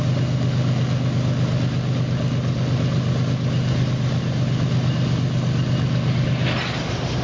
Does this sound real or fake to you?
real